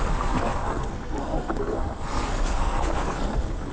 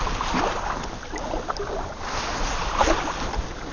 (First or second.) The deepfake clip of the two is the first